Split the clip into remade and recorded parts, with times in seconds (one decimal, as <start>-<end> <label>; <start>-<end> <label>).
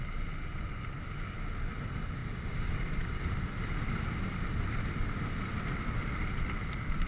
0.0-7.1 recorded